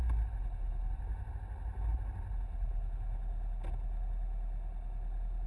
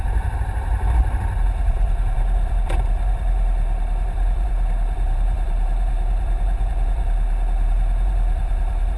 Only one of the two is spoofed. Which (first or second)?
second